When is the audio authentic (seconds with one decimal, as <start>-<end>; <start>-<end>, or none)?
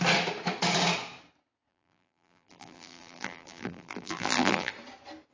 0.0-1.7; 4.7-5.3